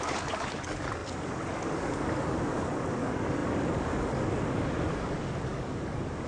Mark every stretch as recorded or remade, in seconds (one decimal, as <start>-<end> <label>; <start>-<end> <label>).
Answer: 0.0-6.3 remade